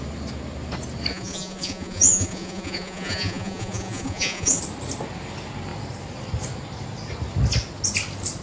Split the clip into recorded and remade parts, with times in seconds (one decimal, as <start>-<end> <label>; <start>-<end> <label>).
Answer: 0.0-1.1 recorded; 1.1-4.6 remade; 4.6-8.4 recorded